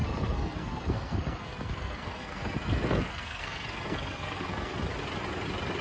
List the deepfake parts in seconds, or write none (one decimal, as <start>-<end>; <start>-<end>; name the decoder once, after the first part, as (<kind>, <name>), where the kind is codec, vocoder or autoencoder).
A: 0.0-4.7 (codec, SNAC)